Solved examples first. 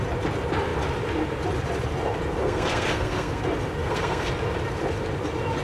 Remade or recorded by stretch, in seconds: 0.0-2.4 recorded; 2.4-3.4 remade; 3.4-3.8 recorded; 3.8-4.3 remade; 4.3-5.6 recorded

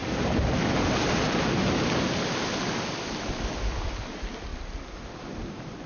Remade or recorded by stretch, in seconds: 0.0-5.9 recorded

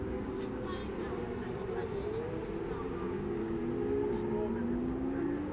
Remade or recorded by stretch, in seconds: 0.0-0.8 remade; 0.8-2.8 recorded; 2.8-3.6 remade; 3.6-4.8 recorded; 4.8-5.5 remade

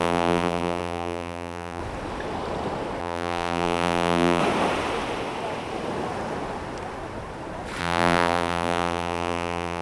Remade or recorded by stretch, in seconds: 0.0-1.8 remade; 1.8-3.0 recorded; 3.0-4.4 remade; 4.4-7.8 recorded; 7.8-9.8 remade

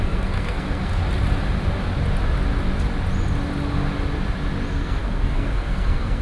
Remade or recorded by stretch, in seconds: 0.0-1.0 remade; 1.0-4.7 recorded; 4.7-6.2 remade

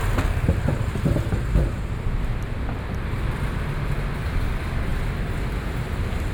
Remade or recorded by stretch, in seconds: 0.0-6.3 recorded